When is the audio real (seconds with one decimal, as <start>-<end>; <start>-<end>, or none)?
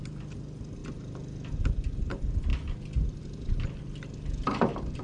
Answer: 0.0-5.0